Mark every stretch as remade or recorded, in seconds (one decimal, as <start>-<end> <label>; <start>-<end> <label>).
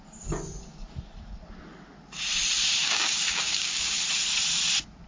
0.0-2.8 recorded; 2.8-4.0 remade; 4.0-5.1 recorded